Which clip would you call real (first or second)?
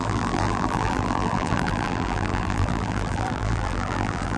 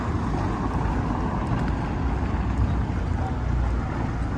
second